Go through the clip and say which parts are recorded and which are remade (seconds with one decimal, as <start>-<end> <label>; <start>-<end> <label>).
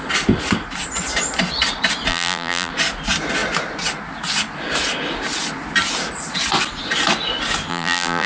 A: 0.0-2.1 recorded; 2.1-2.7 remade; 2.7-7.7 recorded; 7.7-8.3 remade